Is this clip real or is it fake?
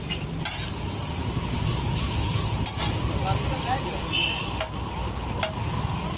real